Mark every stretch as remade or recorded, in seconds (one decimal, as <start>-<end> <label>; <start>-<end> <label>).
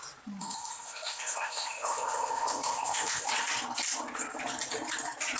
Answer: 0.0-0.4 recorded; 0.4-3.3 remade; 3.3-5.4 recorded